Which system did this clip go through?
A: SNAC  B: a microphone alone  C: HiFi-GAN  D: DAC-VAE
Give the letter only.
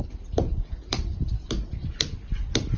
B